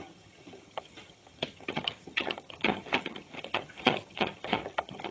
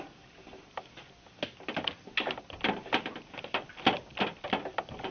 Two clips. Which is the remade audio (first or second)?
first